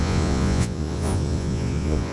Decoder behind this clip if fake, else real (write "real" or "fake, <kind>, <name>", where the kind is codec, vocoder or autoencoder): fake, vocoder, Vocos